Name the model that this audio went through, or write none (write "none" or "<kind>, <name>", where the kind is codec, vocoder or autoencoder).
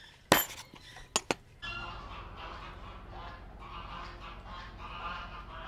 none